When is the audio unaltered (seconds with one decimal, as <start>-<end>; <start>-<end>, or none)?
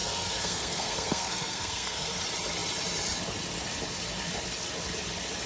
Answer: 2.1-5.5